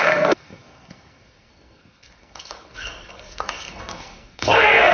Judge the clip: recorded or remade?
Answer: remade